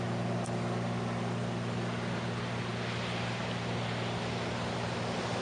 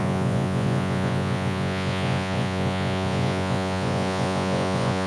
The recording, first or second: first